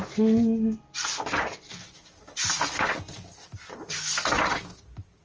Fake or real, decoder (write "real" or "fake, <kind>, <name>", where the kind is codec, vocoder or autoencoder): real